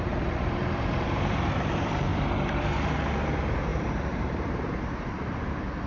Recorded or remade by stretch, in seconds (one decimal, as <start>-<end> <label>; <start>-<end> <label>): 0.0-2.1 remade; 2.1-3.2 recorded; 3.2-5.9 remade